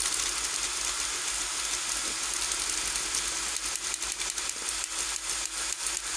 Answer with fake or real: real